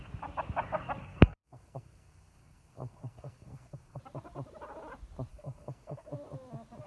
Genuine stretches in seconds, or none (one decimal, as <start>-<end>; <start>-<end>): 0.0-1.0; 4.0-5.3; 6.1-6.9